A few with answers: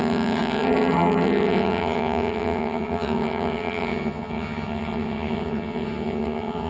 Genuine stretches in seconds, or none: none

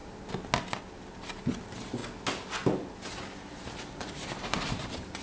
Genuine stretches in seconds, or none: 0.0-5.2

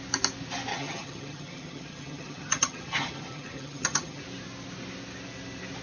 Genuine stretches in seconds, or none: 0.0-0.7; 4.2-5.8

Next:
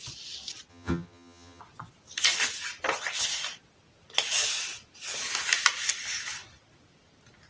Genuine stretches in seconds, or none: 0.0-0.7; 1.6-7.5

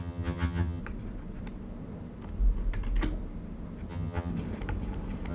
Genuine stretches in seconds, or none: 0.8-3.9; 4.3-5.3

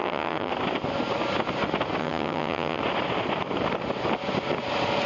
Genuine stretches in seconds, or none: 0.5-2.0; 2.8-5.1

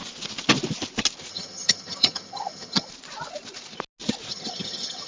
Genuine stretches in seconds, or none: 0.0-1.3; 2.9-4.3

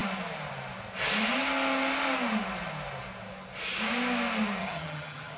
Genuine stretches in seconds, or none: 0.0-4.6